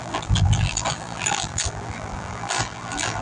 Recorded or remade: remade